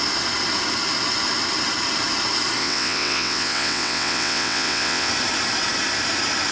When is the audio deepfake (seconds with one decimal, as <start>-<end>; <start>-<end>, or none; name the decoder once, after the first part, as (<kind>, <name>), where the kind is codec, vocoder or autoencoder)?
2.6-5.1 (vocoder, WaveNeXt)